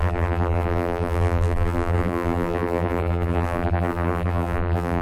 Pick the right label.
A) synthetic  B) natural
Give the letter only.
A